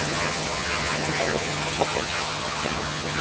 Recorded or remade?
remade